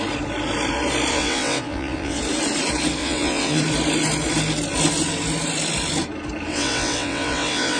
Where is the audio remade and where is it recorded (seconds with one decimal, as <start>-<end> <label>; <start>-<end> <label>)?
0.0-1.1 recorded; 1.1-2.2 remade; 2.2-3.0 recorded; 3.0-3.6 remade; 3.6-6.5 recorded; 6.5-7.8 remade